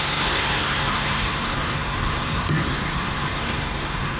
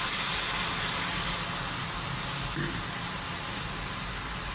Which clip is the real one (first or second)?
second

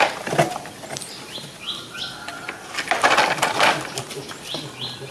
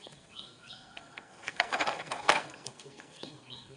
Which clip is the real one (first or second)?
first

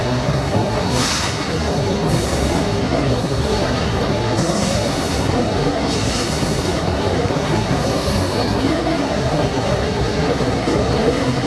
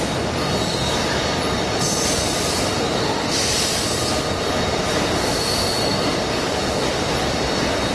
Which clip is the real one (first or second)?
second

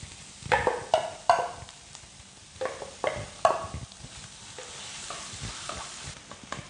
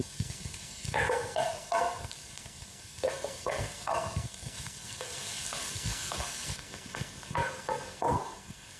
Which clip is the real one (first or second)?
first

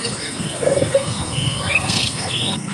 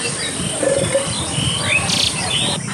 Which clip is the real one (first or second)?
second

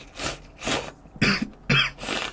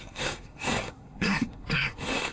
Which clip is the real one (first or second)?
first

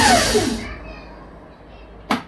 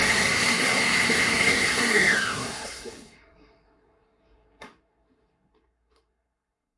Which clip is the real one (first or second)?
first